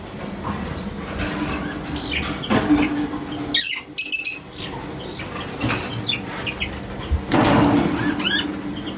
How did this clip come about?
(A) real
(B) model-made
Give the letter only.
A